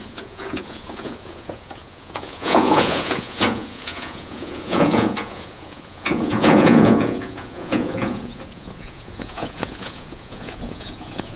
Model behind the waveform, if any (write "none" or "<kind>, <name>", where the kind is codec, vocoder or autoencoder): vocoder, Vocos